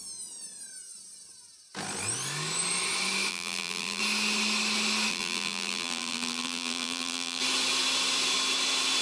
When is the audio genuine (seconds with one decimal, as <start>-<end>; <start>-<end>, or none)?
0.0-3.3; 4.0-5.1; 7.4-9.0